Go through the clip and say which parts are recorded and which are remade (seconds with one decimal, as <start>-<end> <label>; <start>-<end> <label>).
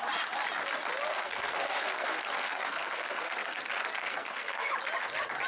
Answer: 0.0-1.1 recorded; 1.1-3.6 remade; 3.6-4.0 recorded; 4.0-4.7 remade; 4.7-5.5 recorded